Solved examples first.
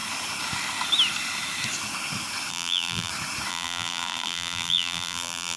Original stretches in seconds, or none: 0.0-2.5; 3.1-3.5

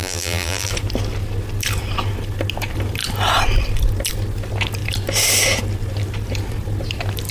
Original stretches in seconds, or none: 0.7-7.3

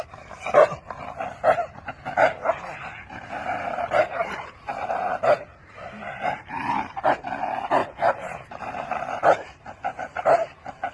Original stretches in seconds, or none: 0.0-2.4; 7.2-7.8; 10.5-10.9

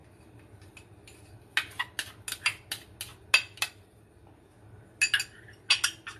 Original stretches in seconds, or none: 0.0-6.2